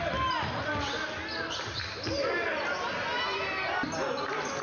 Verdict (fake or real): real